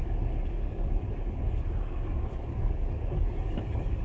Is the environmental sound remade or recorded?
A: remade